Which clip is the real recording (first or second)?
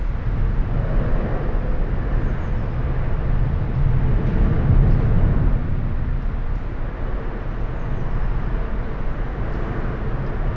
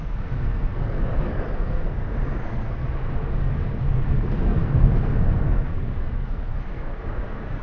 first